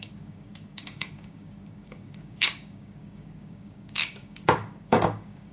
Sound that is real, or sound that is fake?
fake